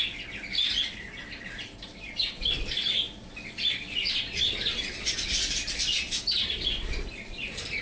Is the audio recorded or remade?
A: recorded